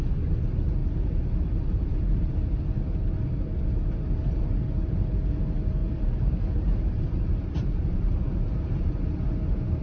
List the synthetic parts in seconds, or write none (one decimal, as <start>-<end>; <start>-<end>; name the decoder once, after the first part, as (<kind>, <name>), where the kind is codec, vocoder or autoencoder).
0.8-2.3 (vocoder, BigVGAN v2); 5.8-9.2